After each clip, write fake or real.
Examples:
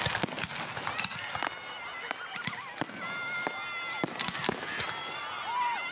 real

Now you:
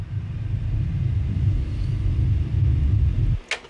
real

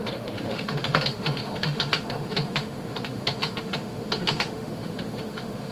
fake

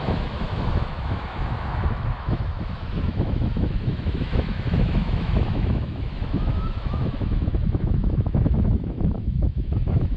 fake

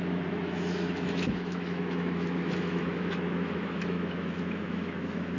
fake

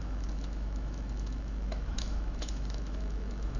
fake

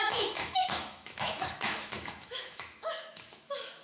fake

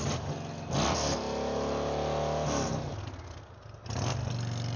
real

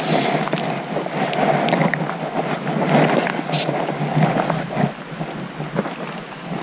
real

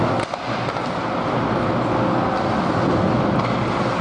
real